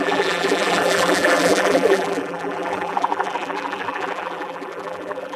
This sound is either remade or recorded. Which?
remade